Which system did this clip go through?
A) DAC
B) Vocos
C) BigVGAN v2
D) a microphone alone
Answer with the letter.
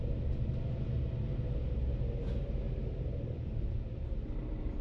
D